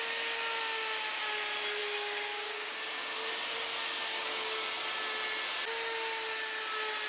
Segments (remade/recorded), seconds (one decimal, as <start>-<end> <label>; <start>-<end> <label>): 0.0-1.8 recorded; 1.8-3.0 remade; 3.0-4.1 recorded; 4.1-4.6 remade; 4.6-7.1 recorded

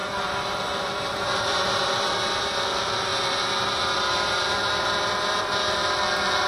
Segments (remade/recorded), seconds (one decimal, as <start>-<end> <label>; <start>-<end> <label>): 0.0-6.5 remade

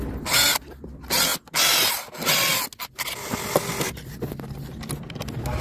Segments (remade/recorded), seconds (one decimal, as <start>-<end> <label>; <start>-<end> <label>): 0.0-5.6 recorded

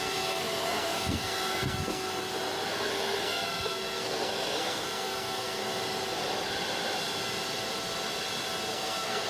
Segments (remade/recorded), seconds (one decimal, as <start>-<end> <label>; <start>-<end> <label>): 0.0-2.2 remade; 2.2-2.7 recorded; 2.7-5.6 remade; 5.6-8.7 recorded; 8.7-9.3 remade

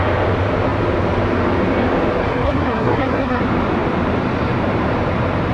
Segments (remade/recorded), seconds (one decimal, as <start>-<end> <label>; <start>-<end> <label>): 0.0-2.2 recorded; 2.2-3.4 remade; 3.4-5.5 recorded

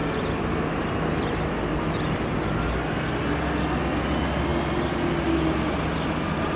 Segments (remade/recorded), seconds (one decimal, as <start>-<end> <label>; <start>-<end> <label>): 0.0-6.6 recorded

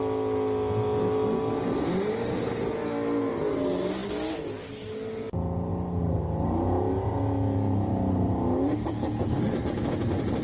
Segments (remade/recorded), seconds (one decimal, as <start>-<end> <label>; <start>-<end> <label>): 0.0-10.4 recorded